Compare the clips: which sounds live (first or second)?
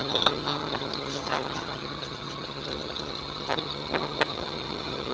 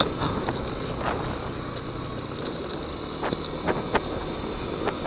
second